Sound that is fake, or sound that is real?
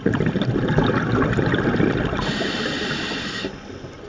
real